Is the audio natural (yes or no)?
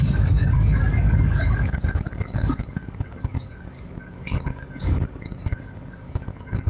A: no